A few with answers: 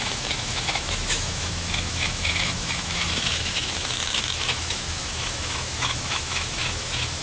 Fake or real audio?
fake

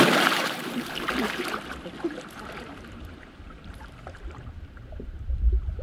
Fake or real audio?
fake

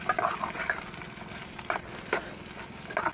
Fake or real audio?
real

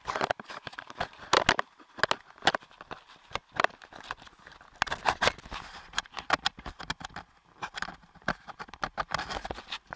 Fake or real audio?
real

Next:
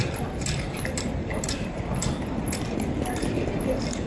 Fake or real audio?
real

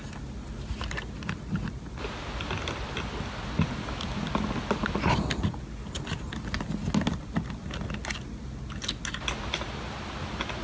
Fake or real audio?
real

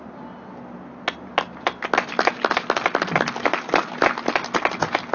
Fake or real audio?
real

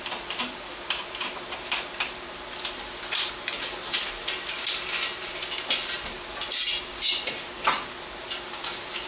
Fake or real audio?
real